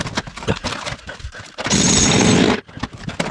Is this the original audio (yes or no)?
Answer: yes